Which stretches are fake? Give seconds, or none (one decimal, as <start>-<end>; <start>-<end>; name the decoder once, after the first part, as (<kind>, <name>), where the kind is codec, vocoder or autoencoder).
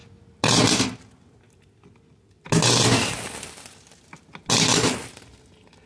none